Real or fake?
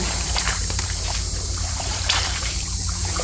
fake